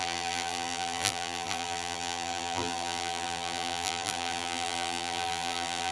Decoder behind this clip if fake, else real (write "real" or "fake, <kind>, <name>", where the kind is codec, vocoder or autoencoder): fake, vocoder, BigVGAN v2